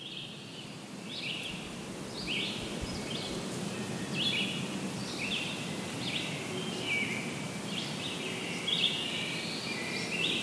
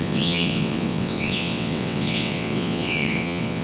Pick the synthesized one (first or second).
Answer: second